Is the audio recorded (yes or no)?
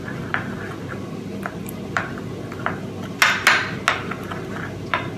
yes